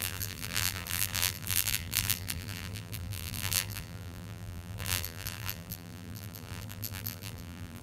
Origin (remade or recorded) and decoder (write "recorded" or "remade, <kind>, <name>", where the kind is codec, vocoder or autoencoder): remade, vocoder, BigVGAN v2